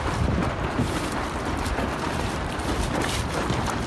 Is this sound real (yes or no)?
no